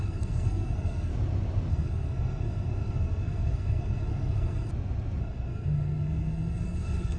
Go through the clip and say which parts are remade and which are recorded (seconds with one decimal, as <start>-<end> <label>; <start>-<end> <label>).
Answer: 0.0-1.1 remade; 1.1-1.7 recorded; 1.7-4.7 remade; 4.7-5.2 recorded; 5.2-7.2 remade